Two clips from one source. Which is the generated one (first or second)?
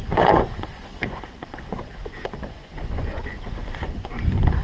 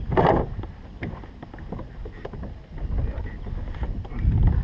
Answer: first